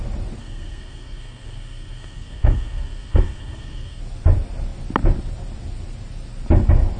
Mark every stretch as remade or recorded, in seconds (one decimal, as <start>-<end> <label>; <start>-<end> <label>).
0.0-0.4 recorded; 0.4-4.0 remade; 4.0-7.0 recorded